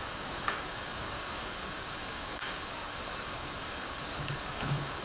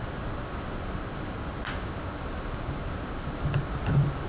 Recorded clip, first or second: second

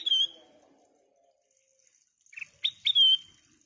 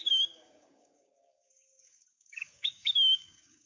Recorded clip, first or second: first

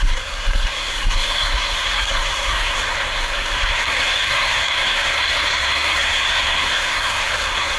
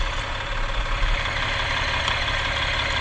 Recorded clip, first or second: second